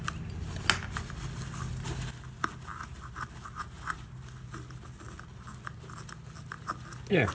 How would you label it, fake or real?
real